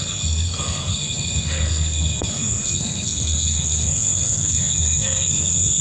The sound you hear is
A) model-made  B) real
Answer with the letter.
A